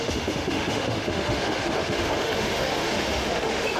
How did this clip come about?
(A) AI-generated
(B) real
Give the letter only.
A